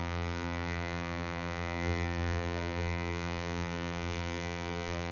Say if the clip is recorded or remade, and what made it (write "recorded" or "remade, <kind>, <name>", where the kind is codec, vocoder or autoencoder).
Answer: remade, vocoder, BigVGAN v2